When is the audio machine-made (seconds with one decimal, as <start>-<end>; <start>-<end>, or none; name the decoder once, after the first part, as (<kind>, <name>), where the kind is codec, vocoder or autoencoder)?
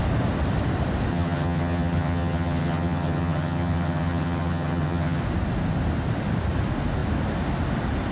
1.1-5.2 (vocoder, HiFi-GAN)